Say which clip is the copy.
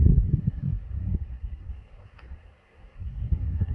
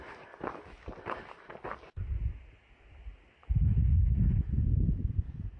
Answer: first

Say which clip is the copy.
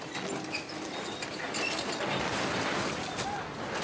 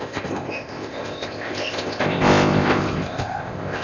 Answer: second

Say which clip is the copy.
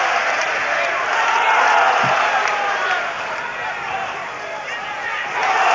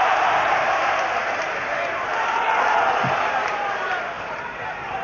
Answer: second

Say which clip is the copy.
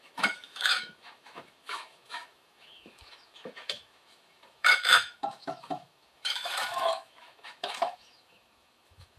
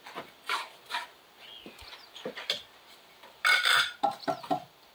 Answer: first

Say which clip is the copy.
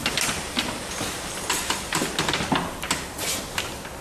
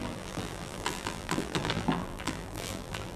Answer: second